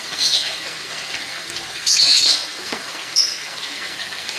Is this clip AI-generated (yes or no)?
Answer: yes